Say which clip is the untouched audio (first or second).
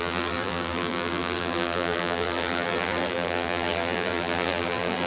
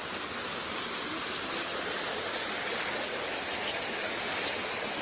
second